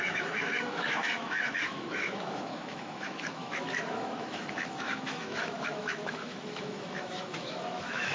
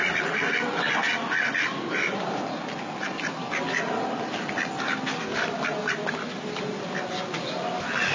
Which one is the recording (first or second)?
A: second